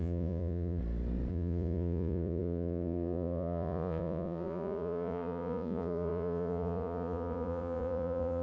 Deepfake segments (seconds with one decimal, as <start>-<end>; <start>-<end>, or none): 0.0-0.8; 1.3-8.4